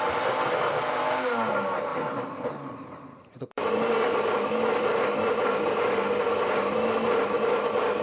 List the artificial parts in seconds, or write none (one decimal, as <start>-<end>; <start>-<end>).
1.9-4.2